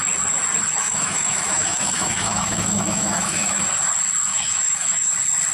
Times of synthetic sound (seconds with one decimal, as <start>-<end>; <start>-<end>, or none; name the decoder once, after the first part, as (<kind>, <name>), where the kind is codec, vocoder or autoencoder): 0.8-3.6 (autoencoder, DAC-VAE); 4.3-5.1